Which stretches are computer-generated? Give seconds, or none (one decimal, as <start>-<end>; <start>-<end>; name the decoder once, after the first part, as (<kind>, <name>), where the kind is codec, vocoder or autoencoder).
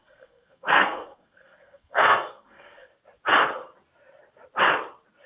0.0-2.9 (codec, SNAC)